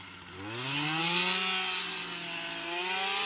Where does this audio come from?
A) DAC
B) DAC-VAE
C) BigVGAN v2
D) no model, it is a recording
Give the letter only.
D